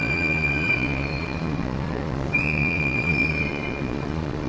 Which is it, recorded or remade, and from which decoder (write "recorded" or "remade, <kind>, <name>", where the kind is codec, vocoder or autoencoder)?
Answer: remade, vocoder, Vocos